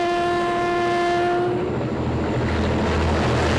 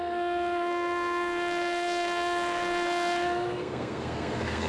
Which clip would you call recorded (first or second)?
first